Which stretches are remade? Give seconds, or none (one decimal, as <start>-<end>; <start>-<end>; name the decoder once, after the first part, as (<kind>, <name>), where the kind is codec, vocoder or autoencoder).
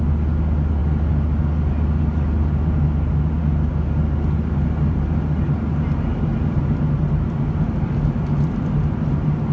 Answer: none